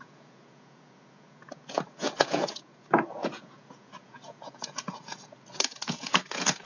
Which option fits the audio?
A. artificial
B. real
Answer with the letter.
A